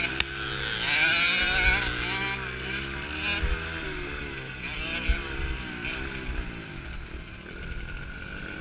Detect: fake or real real